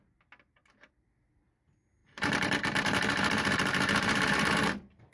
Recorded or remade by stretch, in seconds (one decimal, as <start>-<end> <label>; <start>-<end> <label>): 0.0-2.0 recorded; 2.0-5.1 remade